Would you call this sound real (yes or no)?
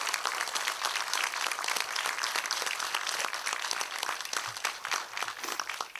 yes